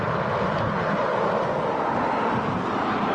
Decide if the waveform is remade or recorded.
recorded